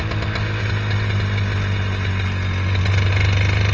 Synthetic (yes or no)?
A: no